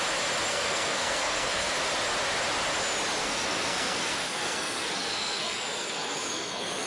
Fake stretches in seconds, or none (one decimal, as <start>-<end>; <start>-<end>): 0.5-1.7; 3.2-6.9